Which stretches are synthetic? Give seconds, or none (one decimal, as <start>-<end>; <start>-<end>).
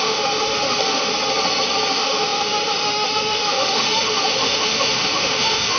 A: 0.0-1.1; 1.9-5.8